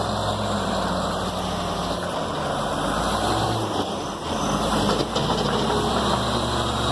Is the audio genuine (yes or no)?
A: yes